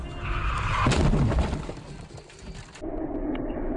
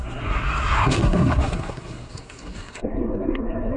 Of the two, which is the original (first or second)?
first